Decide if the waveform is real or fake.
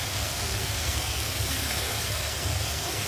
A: fake